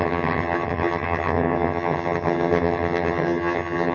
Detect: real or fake fake